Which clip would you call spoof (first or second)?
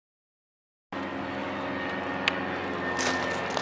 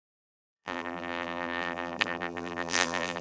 second